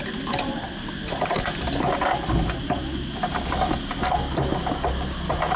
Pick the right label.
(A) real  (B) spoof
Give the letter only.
A